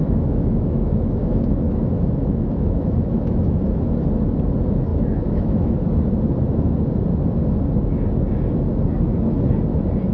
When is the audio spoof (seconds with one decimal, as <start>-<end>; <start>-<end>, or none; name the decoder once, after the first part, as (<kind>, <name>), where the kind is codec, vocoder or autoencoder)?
0.0-3.9 (autoencoder, DAC-VAE); 4.9-5.7